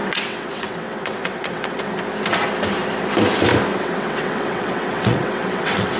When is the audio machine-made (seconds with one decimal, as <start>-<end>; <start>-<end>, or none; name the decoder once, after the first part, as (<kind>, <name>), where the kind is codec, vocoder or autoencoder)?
0.0-1.8 (vocoder, WaveNeXt); 3.7-6.0